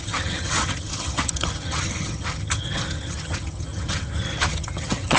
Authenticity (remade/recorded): remade